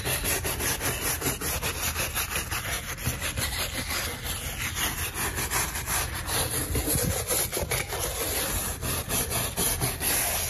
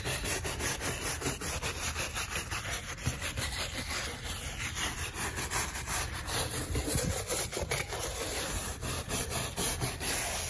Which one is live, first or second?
first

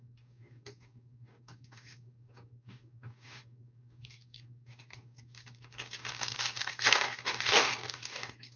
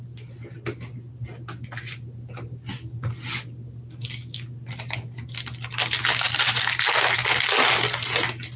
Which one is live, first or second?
second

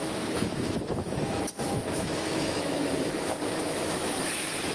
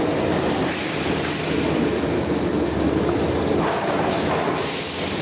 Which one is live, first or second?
second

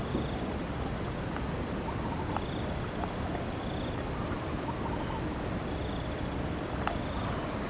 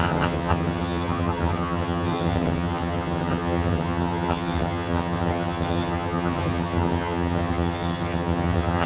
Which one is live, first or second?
first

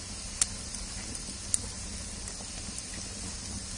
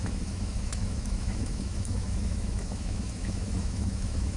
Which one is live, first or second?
first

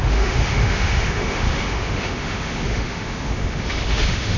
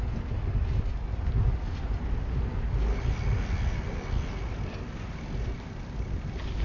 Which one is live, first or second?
second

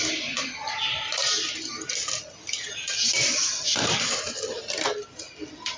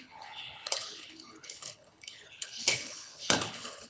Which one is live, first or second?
first